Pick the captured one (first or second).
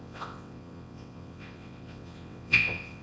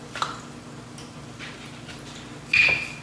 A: second